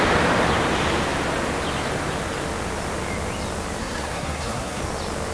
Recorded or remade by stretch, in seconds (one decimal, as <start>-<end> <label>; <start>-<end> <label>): 0.0-3.8 recorded; 3.8-4.8 remade; 4.8-5.3 recorded